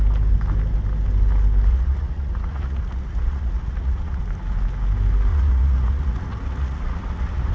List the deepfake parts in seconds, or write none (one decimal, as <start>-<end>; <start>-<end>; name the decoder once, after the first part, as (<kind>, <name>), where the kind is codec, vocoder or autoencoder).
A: 1.7-4.2 (vocoder, Vocos); 5.3-7.5